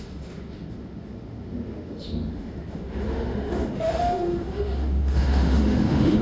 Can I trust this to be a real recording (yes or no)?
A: no